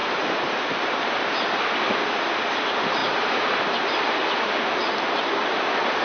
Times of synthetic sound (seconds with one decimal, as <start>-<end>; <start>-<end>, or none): 0.0-0.7; 3.0-3.6; 4.8-5.4